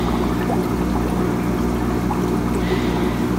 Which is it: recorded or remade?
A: recorded